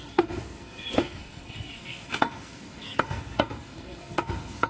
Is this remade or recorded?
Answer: remade